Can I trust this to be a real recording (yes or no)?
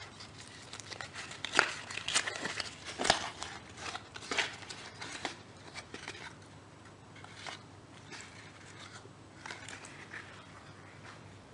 no